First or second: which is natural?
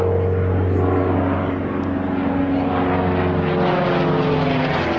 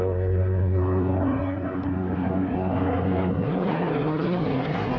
first